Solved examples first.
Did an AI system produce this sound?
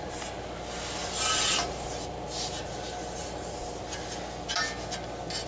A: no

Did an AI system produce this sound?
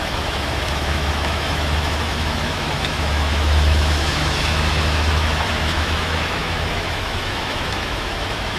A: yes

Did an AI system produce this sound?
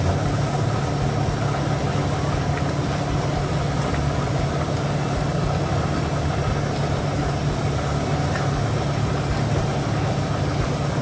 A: no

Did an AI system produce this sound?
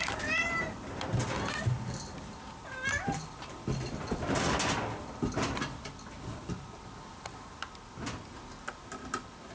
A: no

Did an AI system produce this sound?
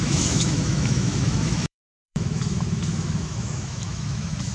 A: yes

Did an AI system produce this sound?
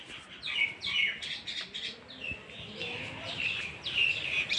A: no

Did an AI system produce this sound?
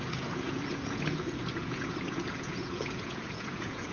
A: yes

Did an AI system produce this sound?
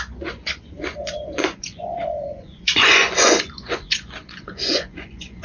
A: yes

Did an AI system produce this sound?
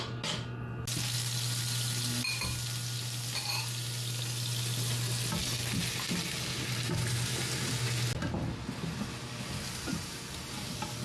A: no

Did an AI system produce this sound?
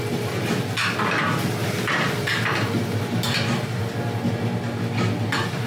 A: no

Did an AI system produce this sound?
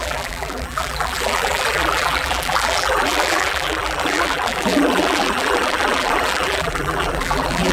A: yes